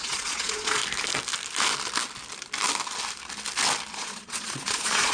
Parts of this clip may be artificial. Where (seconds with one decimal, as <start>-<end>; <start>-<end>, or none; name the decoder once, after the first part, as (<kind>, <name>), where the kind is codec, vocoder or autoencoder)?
0.0-0.8 (vocoder, Vocos); 3.9-5.1